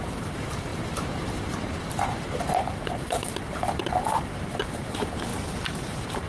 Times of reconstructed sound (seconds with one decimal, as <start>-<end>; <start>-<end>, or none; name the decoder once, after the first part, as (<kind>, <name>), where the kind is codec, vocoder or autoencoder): 0.0-5.3 (vocoder, BigVGAN v2); 5.8-6.3